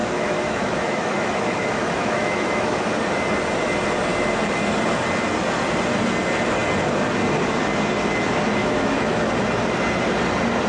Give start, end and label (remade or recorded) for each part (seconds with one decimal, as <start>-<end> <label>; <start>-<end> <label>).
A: 0.0-2.8 remade; 2.8-8.6 recorded; 8.6-9.3 remade; 9.3-10.7 recorded